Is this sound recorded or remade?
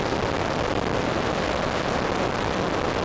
recorded